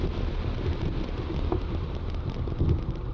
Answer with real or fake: real